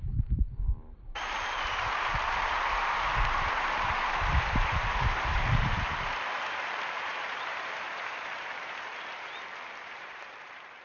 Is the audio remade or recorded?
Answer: remade